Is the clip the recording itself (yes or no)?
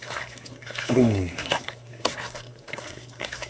no